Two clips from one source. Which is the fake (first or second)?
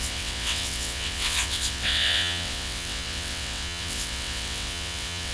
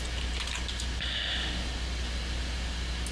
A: first